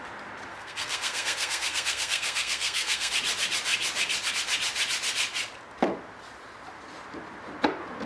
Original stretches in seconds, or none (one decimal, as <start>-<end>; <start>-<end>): 0.0-0.5; 3.1-8.1